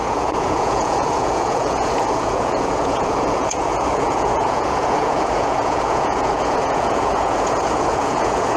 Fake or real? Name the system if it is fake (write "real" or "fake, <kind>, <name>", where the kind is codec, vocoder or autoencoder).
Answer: fake, vocoder, Vocos